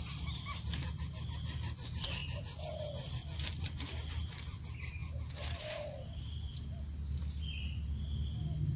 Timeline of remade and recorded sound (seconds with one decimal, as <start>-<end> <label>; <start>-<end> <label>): 0.0-8.8 recorded